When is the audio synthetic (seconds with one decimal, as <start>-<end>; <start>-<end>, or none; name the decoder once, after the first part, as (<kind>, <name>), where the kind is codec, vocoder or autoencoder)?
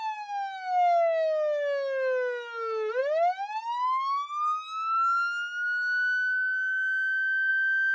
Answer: none